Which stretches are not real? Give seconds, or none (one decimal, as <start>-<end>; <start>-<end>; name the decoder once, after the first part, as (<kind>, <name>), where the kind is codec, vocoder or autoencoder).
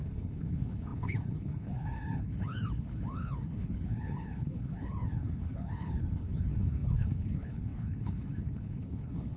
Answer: 0.0-9.4 (codec, HILCodec)